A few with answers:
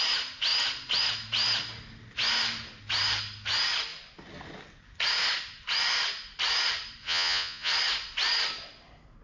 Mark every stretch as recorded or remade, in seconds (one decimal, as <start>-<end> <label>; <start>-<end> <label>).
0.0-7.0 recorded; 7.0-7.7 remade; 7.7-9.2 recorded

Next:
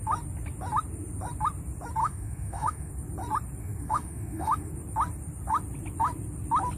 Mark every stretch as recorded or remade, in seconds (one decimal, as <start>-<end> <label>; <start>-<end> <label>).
0.0-2.0 recorded; 2.0-2.9 remade; 2.9-3.6 recorded; 3.6-4.7 remade; 4.7-6.8 recorded

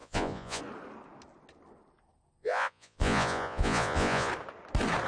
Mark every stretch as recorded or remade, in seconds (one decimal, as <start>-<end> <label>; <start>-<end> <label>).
0.0-0.6 remade; 0.6-2.4 recorded; 2.4-4.3 remade; 4.3-5.1 recorded